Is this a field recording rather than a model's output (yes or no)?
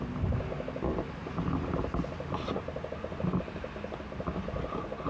yes